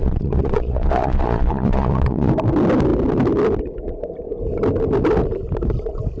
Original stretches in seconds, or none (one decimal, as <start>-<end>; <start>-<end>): 2.3-6.2